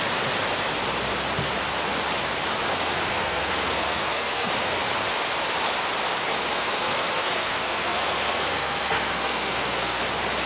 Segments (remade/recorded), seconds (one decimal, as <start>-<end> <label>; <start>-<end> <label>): 0.0-3.1 recorded; 3.1-4.5 remade; 4.5-6.5 recorded; 6.5-10.0 remade; 10.0-10.5 recorded